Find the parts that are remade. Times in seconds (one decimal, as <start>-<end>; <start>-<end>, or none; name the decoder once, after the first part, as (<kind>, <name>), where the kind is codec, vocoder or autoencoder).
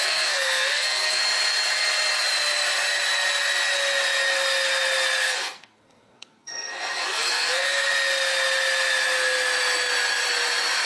0.0-1.2 (codec, SNAC); 5.2-7.9